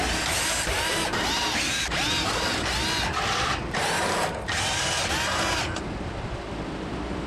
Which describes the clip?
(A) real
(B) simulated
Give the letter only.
A